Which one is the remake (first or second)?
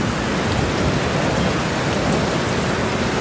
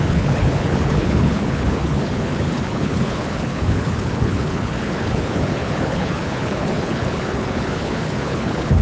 second